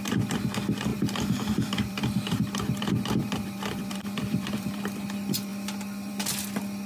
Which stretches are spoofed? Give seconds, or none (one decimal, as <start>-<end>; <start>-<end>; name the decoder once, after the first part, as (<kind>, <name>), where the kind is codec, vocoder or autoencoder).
0.9-4.8 (vocoder, BigVGAN v2)